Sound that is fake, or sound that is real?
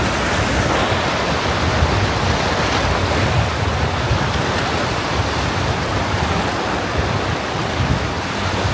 real